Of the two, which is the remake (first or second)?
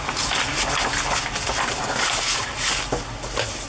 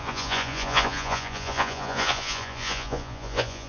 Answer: second